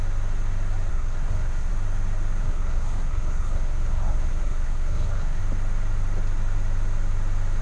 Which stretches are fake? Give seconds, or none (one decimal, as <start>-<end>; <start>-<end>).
0.9-1.7; 2.4-5.4